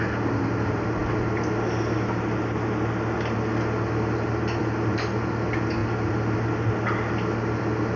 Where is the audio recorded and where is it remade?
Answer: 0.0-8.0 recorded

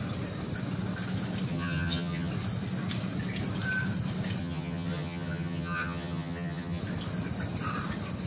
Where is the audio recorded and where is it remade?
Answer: 0.0-1.5 recorded; 1.5-2.3 remade; 2.3-4.4 recorded; 4.4-6.8 remade; 6.8-8.3 recorded

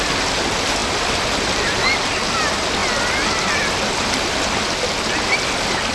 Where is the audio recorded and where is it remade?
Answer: 0.0-5.9 recorded

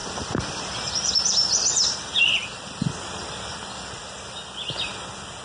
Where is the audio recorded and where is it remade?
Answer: 0.0-4.0 remade; 4.0-4.9 recorded; 4.9-5.4 remade